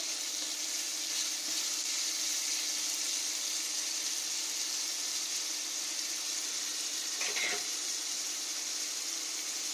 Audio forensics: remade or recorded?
recorded